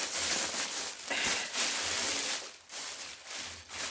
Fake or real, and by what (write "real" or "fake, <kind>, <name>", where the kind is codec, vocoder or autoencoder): fake, vocoder, BigVGAN v2